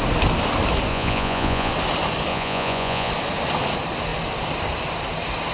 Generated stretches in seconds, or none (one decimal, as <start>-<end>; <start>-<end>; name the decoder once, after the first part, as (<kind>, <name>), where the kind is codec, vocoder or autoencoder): 0.9-1.7 (vocoder, Vocos); 2.3-3.1